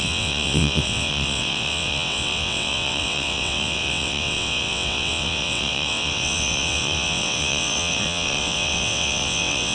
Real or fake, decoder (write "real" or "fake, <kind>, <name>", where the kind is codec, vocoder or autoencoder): fake, vocoder, WaveNeXt